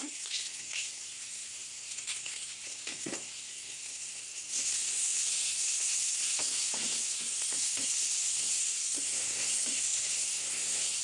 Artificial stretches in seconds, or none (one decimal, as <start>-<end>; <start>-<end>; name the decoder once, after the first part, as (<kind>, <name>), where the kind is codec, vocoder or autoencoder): 0.0-11.0 (codec, SNAC)